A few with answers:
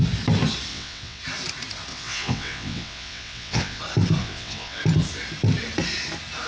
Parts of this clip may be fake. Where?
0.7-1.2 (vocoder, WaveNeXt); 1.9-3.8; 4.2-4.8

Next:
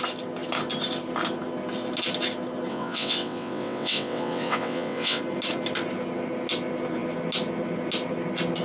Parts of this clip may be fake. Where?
2.7-5.2 (vocoder, WaveNeXt)